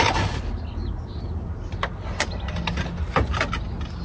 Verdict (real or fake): real